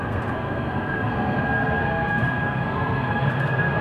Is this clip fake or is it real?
fake